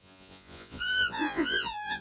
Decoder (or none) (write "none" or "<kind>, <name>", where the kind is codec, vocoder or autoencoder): vocoder, Vocos